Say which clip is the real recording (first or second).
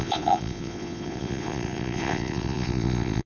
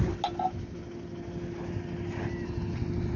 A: second